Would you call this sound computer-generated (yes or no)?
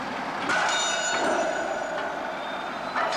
no